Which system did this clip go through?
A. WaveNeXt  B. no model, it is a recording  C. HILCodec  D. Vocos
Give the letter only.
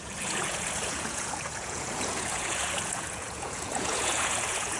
D